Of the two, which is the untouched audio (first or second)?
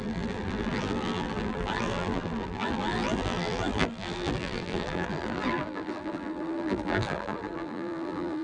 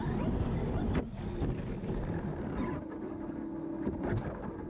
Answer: second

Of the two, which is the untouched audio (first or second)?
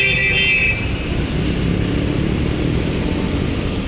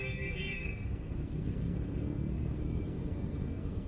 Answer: first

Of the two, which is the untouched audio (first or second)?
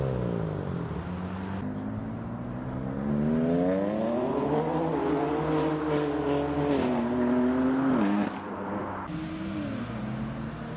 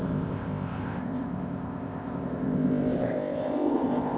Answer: first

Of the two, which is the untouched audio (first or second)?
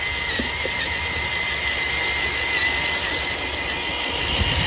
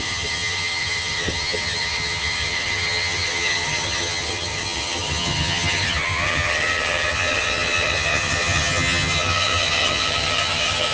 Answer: first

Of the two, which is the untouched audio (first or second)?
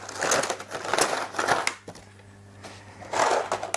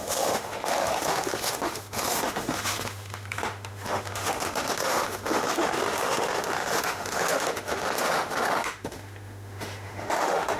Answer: first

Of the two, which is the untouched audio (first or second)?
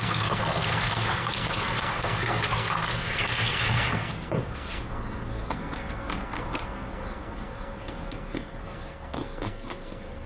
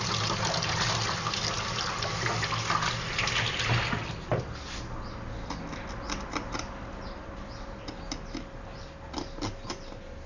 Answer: second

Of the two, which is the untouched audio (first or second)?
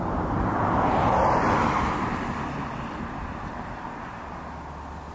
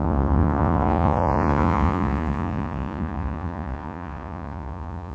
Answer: first